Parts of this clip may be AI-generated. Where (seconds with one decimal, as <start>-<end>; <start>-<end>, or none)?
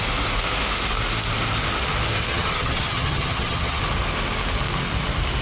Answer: 2.3-3.8